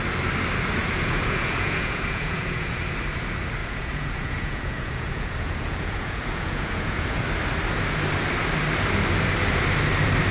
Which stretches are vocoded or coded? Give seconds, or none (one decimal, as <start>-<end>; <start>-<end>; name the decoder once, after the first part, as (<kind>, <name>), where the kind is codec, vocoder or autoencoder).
0.8-2.8 (vocoder, Vocos); 3.6-7.2